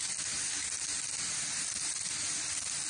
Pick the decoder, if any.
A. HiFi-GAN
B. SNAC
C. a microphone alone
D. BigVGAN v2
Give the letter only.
C